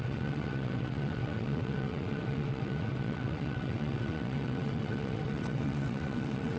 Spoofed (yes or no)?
yes